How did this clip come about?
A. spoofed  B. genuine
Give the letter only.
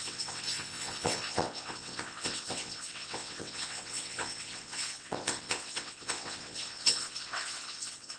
A